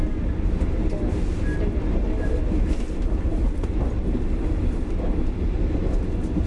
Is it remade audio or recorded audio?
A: recorded